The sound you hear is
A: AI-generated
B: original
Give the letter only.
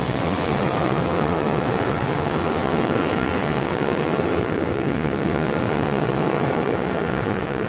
A